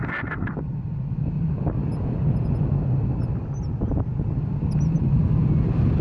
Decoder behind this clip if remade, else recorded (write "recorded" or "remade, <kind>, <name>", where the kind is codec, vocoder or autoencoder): recorded